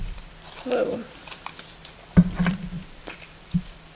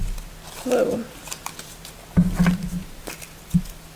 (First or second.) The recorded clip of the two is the second